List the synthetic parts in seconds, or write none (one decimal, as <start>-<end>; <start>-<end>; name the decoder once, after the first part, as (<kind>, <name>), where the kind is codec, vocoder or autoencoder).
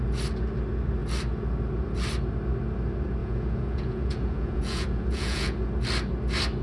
3.2-5.7 (vocoder, Vocos)